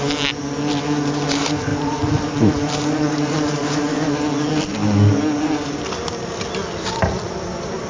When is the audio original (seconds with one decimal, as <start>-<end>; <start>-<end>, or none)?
0.0-1.7; 4.1-7.9